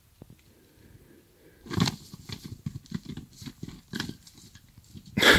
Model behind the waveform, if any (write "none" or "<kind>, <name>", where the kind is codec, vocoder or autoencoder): none